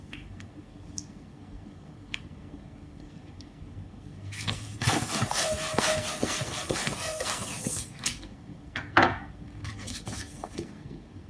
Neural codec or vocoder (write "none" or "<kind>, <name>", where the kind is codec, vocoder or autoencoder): codec, SNAC